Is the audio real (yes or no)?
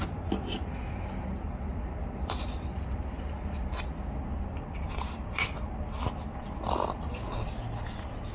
yes